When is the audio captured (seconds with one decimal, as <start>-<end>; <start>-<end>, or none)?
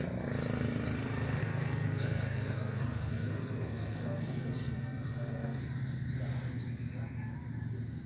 0.0-1.4; 5.6-8.1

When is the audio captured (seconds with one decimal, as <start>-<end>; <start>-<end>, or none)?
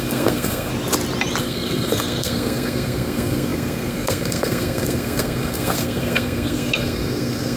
0.7-1.4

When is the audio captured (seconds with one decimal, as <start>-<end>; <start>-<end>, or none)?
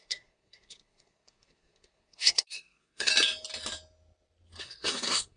3.1-4.6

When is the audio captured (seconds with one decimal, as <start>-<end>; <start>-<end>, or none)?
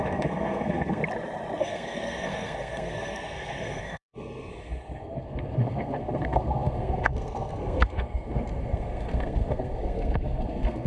1.0-1.6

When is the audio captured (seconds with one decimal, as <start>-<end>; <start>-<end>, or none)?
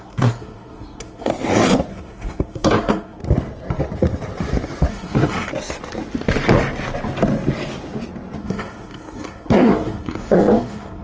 1.3-1.9; 3.2-4.9; 5.5-8.4